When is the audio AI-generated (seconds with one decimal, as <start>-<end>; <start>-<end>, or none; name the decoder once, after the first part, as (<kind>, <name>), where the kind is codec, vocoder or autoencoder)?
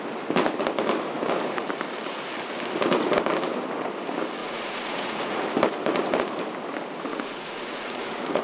4.4-5.4 (vocoder, Vocos); 7.1-8.4